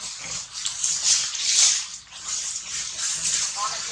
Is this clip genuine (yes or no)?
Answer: yes